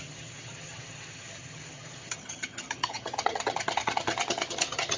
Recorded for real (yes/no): no